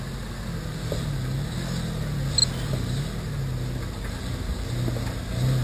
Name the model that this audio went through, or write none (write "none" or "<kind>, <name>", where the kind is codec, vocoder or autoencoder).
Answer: none